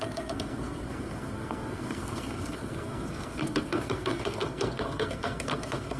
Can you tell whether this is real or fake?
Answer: fake